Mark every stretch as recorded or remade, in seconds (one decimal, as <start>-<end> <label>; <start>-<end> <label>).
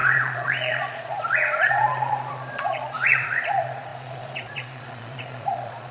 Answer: 0.0-5.9 remade